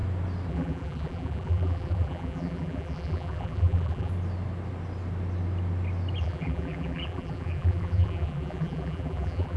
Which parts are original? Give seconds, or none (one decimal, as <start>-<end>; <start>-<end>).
0.0-0.5; 4.1-6.2